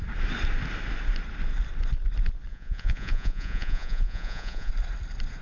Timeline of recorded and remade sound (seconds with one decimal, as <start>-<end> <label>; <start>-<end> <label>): 0.0-2.5 recorded; 2.5-4.7 remade; 4.7-5.4 recorded